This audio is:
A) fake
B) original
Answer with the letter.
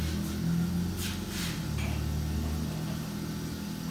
B